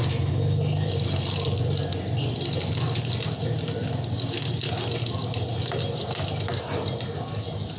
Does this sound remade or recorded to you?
recorded